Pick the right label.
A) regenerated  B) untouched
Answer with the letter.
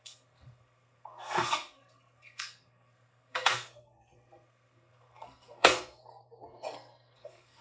A